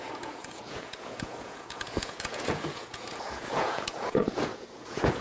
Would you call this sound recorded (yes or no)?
no